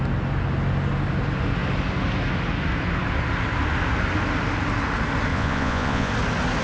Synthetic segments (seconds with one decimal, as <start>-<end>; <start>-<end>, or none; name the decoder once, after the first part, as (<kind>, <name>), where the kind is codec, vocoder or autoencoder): 5.3-6.1 (vocoder, Vocos)